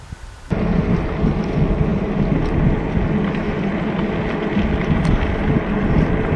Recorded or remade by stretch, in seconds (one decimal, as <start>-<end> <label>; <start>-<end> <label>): 0.0-6.4 recorded